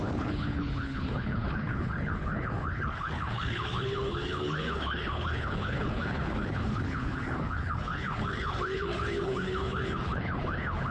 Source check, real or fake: fake